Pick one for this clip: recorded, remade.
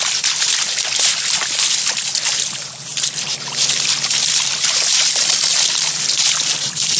recorded